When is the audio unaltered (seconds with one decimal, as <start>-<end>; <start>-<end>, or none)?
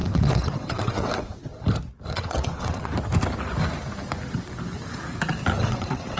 1.5-2.1; 2.9-5.6